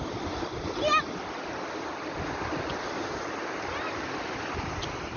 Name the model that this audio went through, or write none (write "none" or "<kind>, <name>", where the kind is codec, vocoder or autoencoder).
none